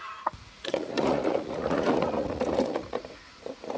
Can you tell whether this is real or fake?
fake